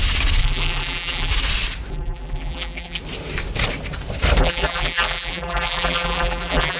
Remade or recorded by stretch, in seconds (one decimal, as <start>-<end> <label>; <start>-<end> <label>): 0.0-0.4 recorded; 0.4-1.3 remade; 1.3-1.9 recorded; 1.9-3.0 remade; 3.0-4.4 recorded; 4.4-6.8 remade